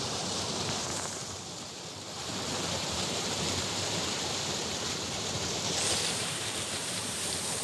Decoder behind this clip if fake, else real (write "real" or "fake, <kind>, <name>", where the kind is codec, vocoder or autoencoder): fake, vocoder, BigVGAN v2